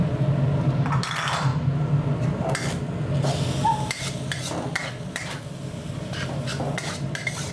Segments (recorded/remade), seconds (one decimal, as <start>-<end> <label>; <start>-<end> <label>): 0.0-1.5 remade; 1.5-5.0 recorded; 5.0-7.5 remade